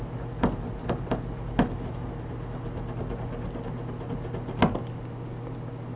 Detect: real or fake real